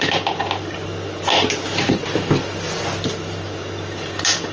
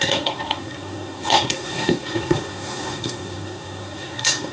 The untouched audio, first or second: first